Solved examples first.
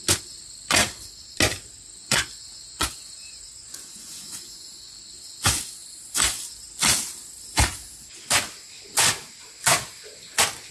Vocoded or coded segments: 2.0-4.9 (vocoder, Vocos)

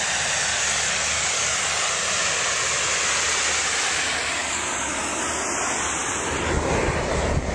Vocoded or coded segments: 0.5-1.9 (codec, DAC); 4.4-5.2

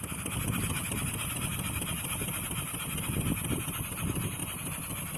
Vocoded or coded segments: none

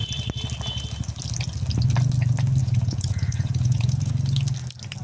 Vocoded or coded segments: 2.6-4.1 (vocoder, Vocos)